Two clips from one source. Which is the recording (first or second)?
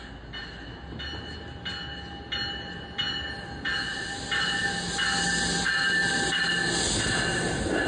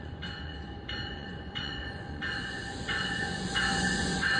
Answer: first